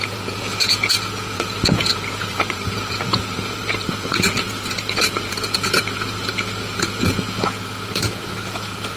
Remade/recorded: remade